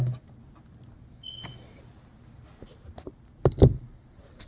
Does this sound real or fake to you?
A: real